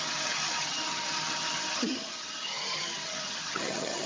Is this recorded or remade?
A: remade